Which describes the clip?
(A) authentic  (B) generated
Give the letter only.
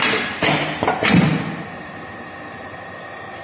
B